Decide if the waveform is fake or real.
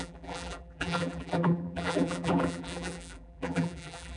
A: fake